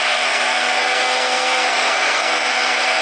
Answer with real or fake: fake